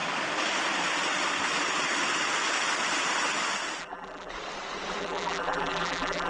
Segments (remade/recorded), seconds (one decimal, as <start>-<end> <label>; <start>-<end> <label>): 0.0-3.8 recorded; 3.8-4.3 remade; 4.3-5.0 recorded; 5.0-6.3 remade